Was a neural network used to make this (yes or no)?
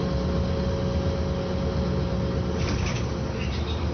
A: no